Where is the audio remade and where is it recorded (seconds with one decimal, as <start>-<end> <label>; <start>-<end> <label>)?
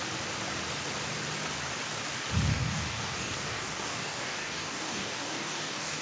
0.0-2.5 recorded; 2.5-6.0 remade